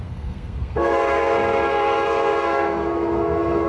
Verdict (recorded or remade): remade